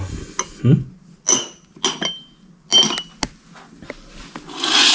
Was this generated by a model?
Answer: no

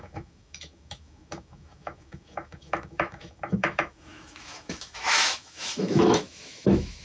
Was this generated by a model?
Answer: yes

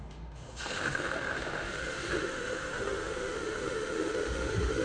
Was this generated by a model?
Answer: yes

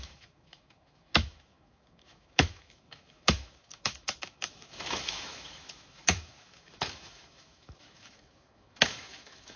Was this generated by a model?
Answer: yes